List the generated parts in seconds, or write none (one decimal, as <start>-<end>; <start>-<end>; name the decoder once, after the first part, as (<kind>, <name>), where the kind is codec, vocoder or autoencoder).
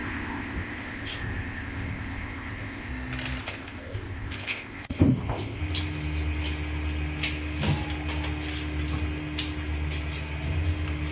0.0-2.9 (codec, ZipCodec); 3.4-5.6